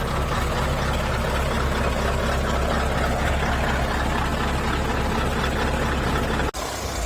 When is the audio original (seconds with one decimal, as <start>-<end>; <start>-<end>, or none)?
0.0-7.1